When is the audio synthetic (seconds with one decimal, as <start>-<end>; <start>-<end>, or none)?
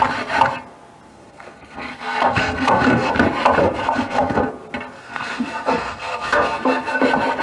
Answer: 1.1-3.1; 3.6-4.5; 5.0-7.0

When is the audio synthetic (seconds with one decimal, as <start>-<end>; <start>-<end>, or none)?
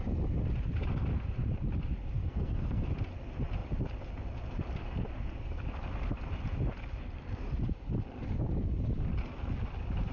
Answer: 2.2-2.9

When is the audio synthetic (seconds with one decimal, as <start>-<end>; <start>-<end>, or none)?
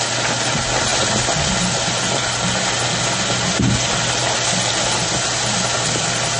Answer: none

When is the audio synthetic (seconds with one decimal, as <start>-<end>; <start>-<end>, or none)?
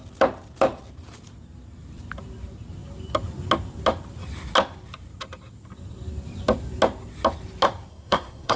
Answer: 7.9-8.6